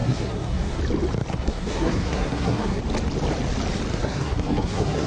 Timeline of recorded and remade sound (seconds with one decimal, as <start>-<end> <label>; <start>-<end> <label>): 0.0-0.8 remade; 0.8-1.3 recorded; 1.3-2.8 remade; 2.8-3.9 recorded; 3.9-5.1 remade